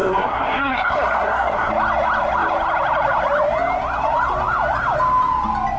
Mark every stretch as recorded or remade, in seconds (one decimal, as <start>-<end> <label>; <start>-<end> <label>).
0.0-1.7 remade; 1.7-5.8 recorded